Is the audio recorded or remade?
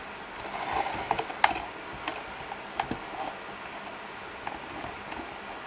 recorded